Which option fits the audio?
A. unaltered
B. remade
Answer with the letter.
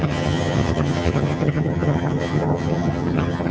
B